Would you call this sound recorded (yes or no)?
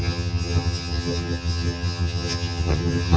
no